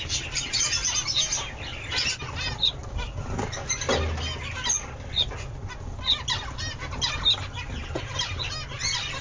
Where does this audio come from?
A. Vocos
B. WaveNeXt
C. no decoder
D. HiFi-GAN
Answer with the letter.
C